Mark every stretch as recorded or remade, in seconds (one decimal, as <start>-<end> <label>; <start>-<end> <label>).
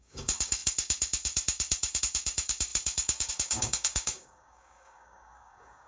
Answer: 0.0-5.9 remade